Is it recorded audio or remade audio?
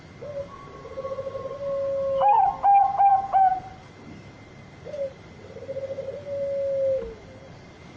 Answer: recorded